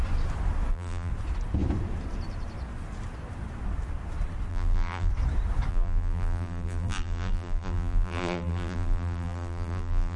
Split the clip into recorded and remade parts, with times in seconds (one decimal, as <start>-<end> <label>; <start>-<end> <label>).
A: 0.0-0.7 recorded; 0.7-1.1 remade; 1.1-4.5 recorded; 4.5-5.1 remade; 5.1-5.7 recorded; 5.7-10.2 remade